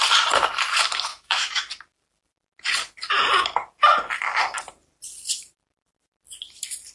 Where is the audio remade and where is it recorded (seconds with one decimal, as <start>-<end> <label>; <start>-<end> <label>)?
0.0-1.1 recorded; 1.1-1.7 remade; 1.7-6.9 recorded